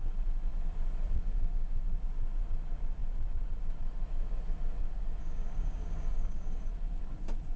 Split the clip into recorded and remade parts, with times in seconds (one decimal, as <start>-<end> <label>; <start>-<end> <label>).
0.0-5.2 recorded; 5.2-6.7 remade; 6.7-7.6 recorded